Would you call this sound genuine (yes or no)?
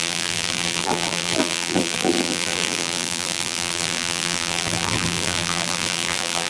no